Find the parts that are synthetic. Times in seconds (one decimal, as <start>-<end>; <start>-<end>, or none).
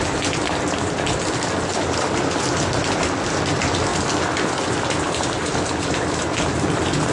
none